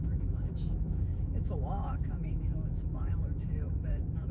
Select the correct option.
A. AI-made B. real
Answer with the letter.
A